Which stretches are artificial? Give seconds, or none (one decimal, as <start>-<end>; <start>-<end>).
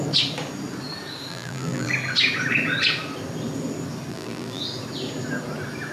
1.3-1.9; 4.1-4.6